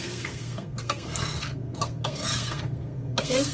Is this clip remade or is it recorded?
remade